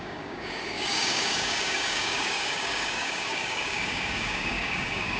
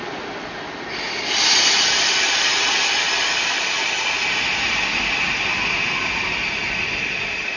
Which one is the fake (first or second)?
first